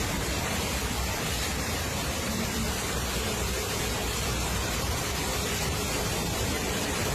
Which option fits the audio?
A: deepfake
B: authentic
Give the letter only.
A